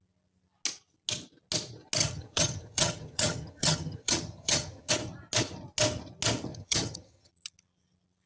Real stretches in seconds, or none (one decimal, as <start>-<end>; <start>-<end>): 0.0-2.0; 4.9-6.5; 7.3-8.3